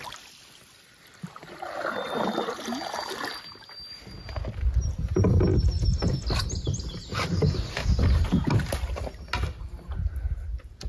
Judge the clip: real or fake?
real